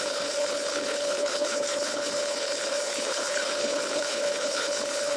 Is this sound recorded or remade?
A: remade